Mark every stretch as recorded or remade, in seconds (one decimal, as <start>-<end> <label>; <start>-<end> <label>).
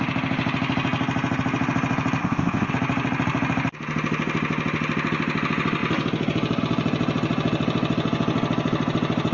0.0-2.2 recorded; 2.2-2.7 remade; 2.7-9.3 recorded